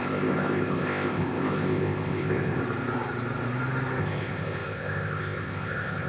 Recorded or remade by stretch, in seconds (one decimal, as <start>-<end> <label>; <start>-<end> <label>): 0.0-2.6 remade; 2.6-4.0 recorded; 4.0-6.1 remade